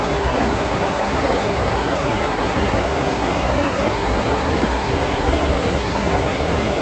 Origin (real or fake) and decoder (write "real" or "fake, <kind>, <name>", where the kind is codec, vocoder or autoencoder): fake, codec, SNAC